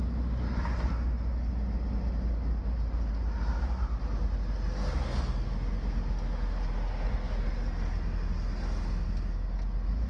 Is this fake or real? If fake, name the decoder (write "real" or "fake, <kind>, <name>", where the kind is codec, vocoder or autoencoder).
real